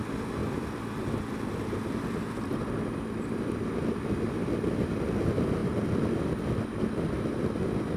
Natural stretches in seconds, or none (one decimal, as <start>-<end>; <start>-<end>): 0.0-0.4; 3.9-8.0